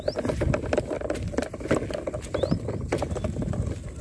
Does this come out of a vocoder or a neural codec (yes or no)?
no